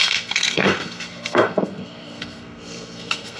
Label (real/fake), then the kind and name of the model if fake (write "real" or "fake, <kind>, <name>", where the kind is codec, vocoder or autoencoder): fake, codec, SNAC